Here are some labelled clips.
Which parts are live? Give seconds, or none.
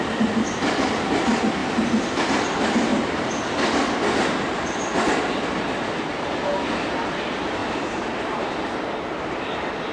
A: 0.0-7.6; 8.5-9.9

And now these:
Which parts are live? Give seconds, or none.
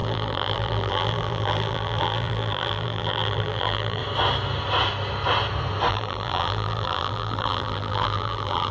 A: 4.0-5.9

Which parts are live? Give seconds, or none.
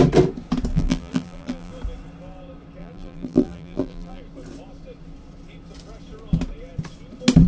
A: 0.0-0.7; 1.7-2.8; 4.2-7.5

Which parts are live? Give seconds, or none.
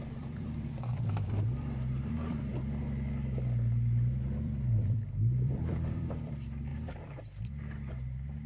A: 2.5-4.2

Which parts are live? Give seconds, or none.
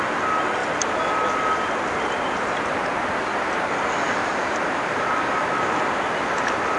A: 0.0-4.2; 5.3-6.8